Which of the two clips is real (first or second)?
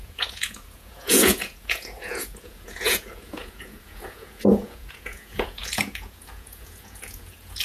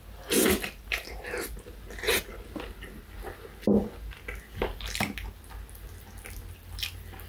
second